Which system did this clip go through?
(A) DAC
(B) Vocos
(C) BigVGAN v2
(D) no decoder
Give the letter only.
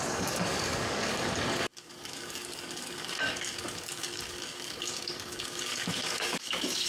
A